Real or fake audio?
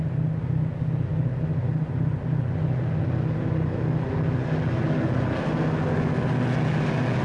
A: real